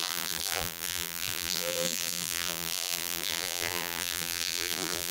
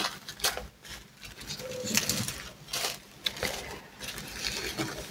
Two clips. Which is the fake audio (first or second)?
first